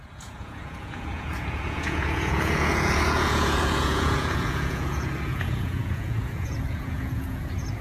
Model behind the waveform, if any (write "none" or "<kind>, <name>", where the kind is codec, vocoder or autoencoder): vocoder, Vocos